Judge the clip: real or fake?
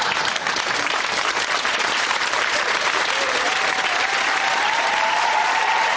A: fake